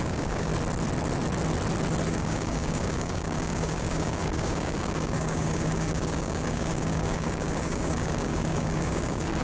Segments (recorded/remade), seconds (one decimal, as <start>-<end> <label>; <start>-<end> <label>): 0.0-0.5 remade; 0.5-2.1 recorded; 2.1-9.4 remade

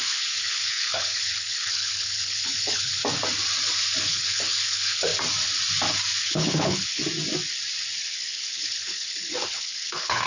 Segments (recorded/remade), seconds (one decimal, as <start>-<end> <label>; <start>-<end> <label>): 0.0-3.0 remade; 3.0-4.0 recorded; 4.0-5.1 remade; 5.1-6.2 recorded; 6.2-7.0 remade; 7.0-8.0 recorded; 8.0-10.3 remade

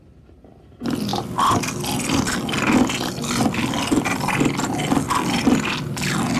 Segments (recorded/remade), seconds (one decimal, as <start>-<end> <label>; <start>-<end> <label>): 0.0-6.4 recorded

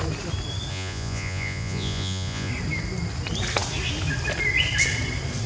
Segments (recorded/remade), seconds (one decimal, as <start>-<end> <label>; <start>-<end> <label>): 0.0-0.7 recorded; 0.7-2.5 remade; 2.5-5.5 recorded

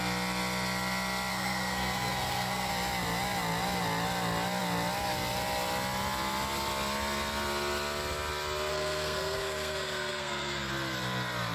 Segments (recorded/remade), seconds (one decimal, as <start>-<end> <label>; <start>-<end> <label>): 0.0-1.3 recorded; 1.3-2.7 remade; 2.7-8.7 recorded; 8.7-10.7 remade; 10.7-11.5 recorded

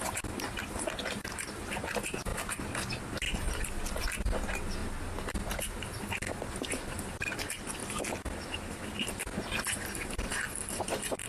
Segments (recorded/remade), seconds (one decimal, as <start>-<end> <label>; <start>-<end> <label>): 0.0-11.3 recorded

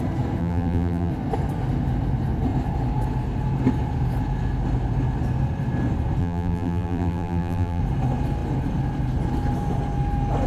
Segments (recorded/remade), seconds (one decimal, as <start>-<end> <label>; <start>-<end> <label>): 0.0-0.4 recorded; 0.4-1.1 remade; 1.1-6.2 recorded; 6.2-7.8 remade; 7.8-10.5 recorded